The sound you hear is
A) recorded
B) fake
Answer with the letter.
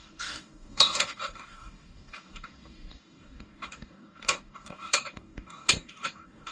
B